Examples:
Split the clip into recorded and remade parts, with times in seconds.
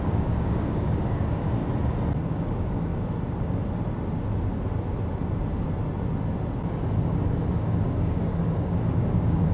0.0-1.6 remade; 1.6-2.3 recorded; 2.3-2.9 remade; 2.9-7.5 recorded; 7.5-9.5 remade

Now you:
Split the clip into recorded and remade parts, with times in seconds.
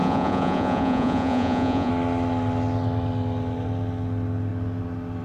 0.0-1.9 remade; 1.9-5.2 recorded